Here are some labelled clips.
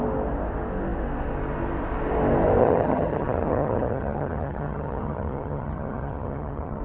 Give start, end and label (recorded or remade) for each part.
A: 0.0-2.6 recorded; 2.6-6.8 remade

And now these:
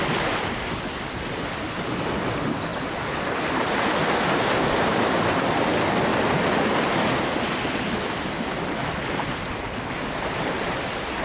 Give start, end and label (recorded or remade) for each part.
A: 0.0-11.2 recorded

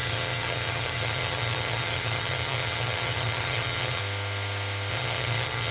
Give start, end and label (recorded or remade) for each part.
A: 0.0-4.0 remade; 4.0-4.9 recorded; 4.9-5.7 remade

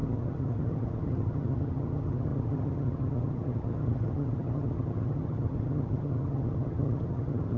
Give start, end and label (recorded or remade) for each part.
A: 0.0-7.6 remade

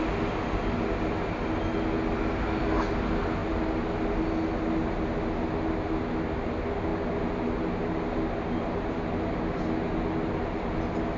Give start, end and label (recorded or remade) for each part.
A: 0.0-11.2 recorded